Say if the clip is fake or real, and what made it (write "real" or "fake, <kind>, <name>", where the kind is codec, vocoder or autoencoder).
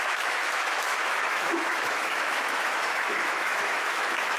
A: fake, autoencoder, DAC-VAE